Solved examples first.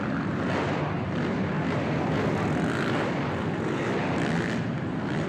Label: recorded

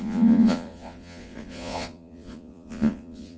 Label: remade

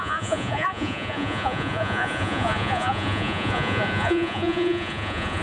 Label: remade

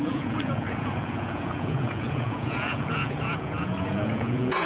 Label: remade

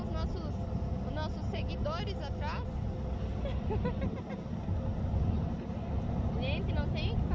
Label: recorded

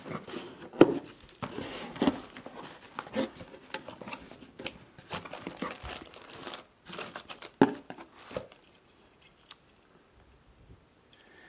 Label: recorded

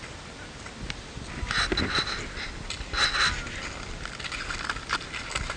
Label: recorded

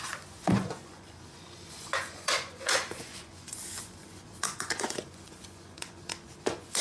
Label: remade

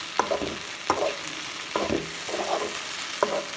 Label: recorded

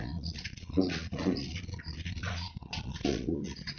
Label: remade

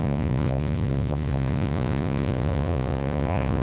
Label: remade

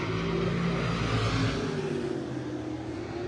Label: recorded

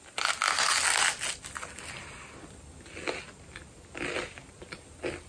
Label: recorded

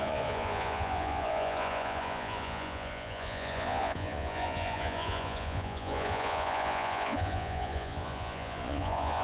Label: remade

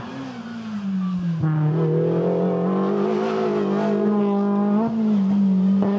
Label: recorded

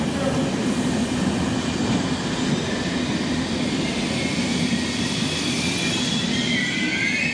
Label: recorded